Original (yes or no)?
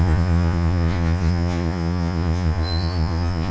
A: no